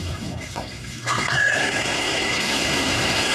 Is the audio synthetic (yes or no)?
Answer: yes